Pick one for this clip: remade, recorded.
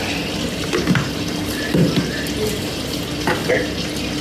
recorded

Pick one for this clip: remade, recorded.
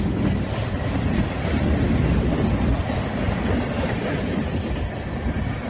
recorded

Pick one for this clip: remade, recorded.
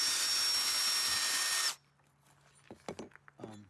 recorded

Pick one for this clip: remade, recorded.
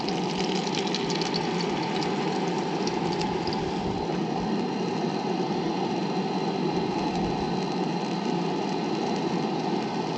recorded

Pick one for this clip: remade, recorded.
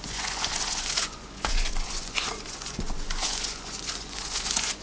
remade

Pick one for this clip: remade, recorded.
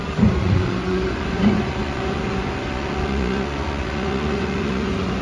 remade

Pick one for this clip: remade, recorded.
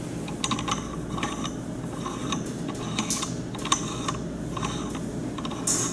recorded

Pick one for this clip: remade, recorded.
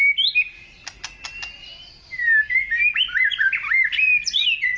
recorded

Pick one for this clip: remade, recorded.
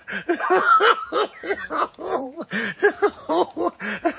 remade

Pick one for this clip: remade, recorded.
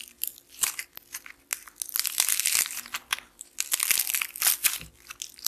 recorded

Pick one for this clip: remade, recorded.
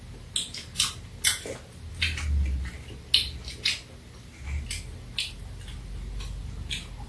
recorded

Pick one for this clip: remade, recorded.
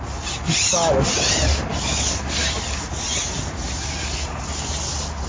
recorded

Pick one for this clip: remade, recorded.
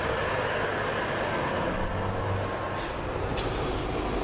recorded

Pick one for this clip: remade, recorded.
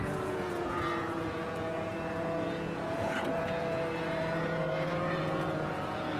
remade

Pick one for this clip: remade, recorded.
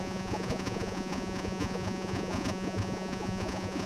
remade